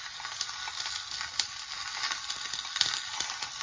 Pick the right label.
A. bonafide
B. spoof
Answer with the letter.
A